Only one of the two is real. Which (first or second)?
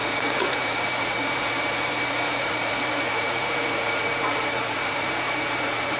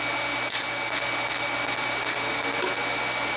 second